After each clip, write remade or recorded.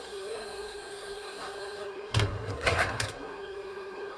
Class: remade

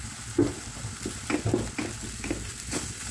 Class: recorded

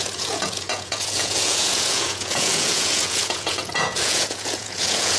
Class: remade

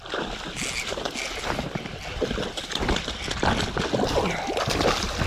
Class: recorded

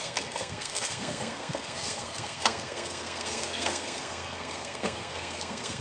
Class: remade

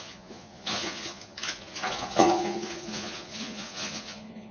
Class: remade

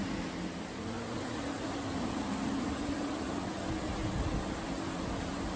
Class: recorded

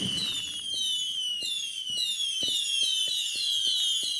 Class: recorded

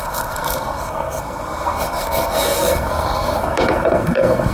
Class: remade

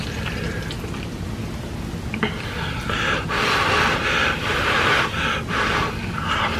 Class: recorded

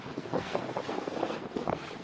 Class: remade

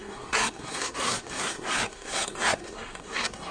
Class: remade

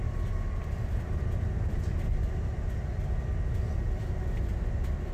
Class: recorded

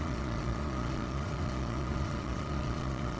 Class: remade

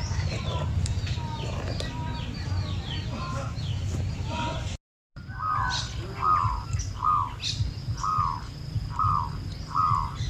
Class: recorded